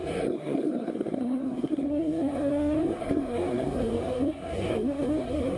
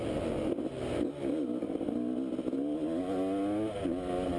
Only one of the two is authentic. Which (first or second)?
second